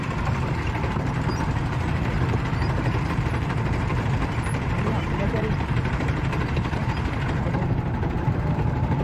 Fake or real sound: fake